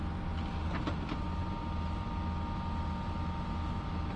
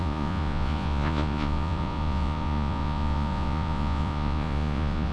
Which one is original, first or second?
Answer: first